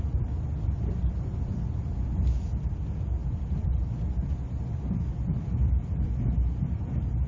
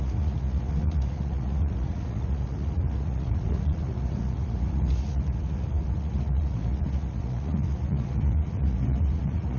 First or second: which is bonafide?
first